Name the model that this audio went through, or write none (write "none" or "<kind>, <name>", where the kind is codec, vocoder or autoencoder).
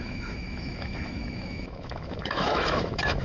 autoencoder, DAC-VAE